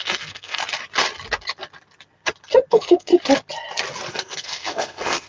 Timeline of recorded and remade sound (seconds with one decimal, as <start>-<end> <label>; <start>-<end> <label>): 0.0-0.6 remade; 0.6-2.7 recorded; 2.7-3.1 remade; 3.1-4.1 recorded; 4.1-5.3 remade